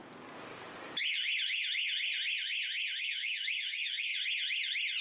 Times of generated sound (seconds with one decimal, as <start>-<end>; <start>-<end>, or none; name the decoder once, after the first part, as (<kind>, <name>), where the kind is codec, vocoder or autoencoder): 3.0-4.1 (codec, DAC)